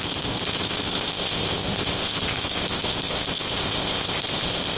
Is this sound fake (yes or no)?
yes